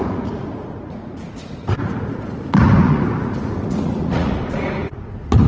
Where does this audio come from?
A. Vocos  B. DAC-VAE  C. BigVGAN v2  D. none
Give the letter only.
A